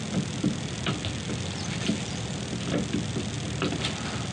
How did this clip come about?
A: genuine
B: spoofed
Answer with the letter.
A